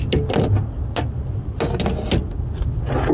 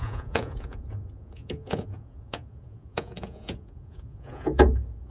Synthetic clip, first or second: second